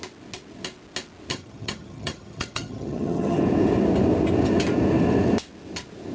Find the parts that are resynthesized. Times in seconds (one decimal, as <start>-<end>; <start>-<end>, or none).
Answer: 1.3-3.4